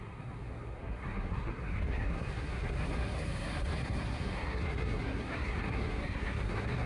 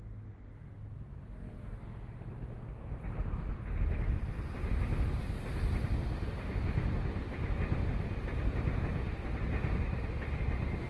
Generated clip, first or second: first